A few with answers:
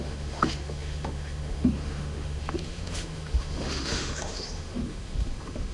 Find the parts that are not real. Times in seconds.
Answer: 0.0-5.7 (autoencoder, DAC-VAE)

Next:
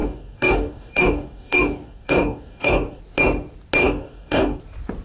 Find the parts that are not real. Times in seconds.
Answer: 0.0-3.0 (codec, DAC); 3.8-4.6

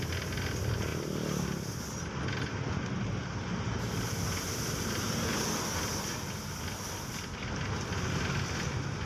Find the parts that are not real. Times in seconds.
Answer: none

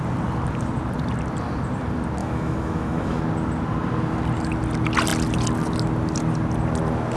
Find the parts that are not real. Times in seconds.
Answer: 2.2-3.2 (autoencoder, DAC-VAE)

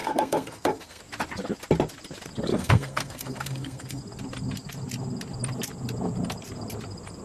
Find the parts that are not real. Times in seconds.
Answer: 0.0-1.0 (codec, SNAC); 2.5-4.0